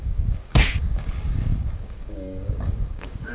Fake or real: fake